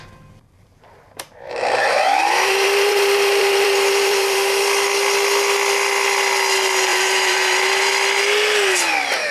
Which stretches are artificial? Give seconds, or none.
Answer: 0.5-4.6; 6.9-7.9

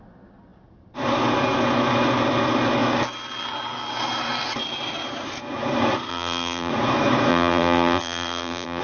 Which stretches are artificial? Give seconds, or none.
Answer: 6.1-6.7; 7.3-8.8

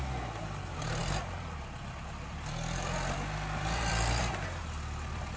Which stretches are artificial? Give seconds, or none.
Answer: 1.0-4.2

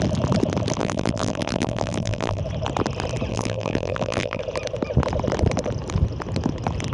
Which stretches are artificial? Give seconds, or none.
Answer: 0.8-2.4; 3.3-4.4

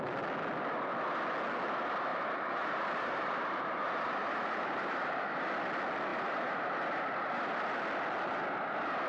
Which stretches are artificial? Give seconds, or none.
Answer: 2.1-5.3; 6.1-6.7